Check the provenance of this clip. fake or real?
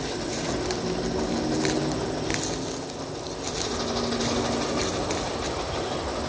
real